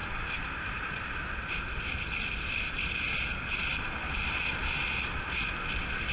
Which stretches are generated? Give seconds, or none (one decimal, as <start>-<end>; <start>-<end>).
0.0-0.8

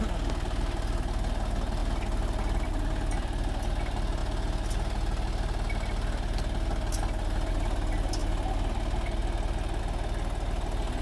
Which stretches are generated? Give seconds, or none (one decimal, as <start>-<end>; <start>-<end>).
none

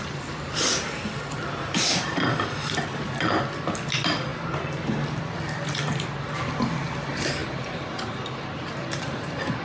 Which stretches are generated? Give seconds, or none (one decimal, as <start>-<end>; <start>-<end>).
0.0-4.3; 5.2-9.6

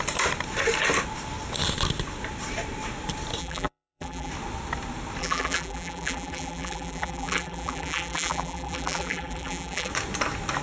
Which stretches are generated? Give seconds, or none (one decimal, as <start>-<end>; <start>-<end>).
3.4-4.3; 5.2-9.9

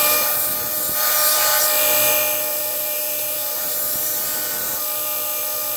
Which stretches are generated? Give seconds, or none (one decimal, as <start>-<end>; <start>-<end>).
0.0-1.6; 2.5-4.8